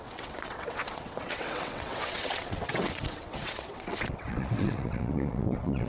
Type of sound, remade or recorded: remade